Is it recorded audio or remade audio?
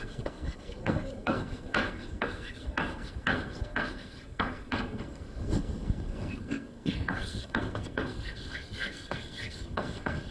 remade